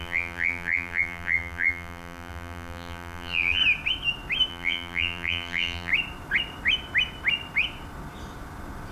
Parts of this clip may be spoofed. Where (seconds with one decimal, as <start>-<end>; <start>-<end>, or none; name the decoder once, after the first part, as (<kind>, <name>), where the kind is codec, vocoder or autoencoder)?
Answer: 0.0-3.6 (vocoder, BigVGAN v2); 4.5-5.9